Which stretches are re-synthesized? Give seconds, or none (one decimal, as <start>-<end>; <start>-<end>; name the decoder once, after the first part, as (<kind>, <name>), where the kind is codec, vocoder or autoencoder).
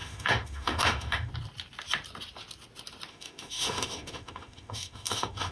0.0-1.3 (autoencoder, DAC-VAE); 3.1-5.5